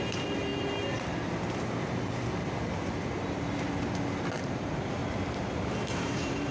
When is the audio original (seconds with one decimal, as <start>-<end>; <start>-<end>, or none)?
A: 0.5-4.4; 5.0-6.0